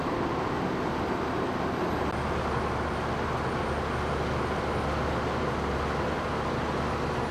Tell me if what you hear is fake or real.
real